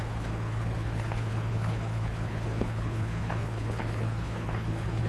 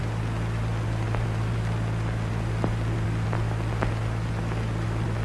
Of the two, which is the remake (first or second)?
first